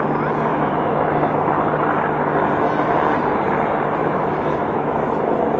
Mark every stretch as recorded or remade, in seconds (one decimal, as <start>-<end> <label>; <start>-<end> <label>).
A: 0.0-0.5 recorded; 0.5-1.5 remade; 1.5-4.0 recorded; 4.0-5.1 remade; 5.1-5.6 recorded